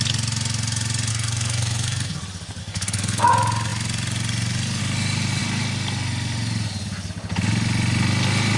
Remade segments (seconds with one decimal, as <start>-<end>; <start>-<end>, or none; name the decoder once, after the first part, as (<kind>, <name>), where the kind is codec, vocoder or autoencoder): 1.1-2.2 (codec, SNAC); 2.6-3.3